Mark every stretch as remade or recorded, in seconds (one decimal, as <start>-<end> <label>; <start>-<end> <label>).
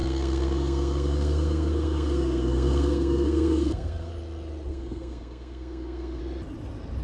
0.0-4.1 remade; 4.1-4.7 recorded; 4.7-6.2 remade; 6.2-7.0 recorded